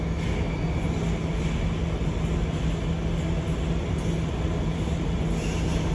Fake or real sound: real